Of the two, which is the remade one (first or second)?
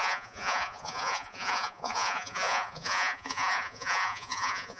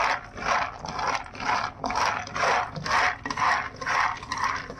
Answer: first